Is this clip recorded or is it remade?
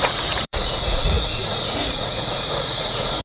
remade